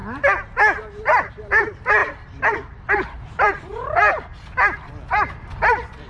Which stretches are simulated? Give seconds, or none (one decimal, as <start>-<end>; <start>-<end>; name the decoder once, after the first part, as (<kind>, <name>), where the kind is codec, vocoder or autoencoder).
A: 1.3-4.3 (vocoder, BigVGAN v2); 5.1-6.1